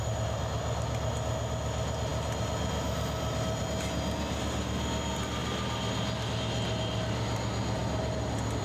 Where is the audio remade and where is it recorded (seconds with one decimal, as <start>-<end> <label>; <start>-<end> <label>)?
0.0-8.6 recorded